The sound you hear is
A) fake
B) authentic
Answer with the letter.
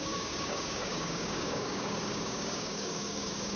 A